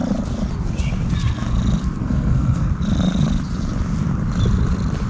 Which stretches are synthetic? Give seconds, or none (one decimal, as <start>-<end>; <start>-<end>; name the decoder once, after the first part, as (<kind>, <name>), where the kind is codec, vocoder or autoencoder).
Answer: 2.0-2.7 (codec, SNAC)